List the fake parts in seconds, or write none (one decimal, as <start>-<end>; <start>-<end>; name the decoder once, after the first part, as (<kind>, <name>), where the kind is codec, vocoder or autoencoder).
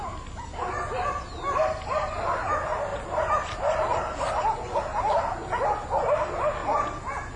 none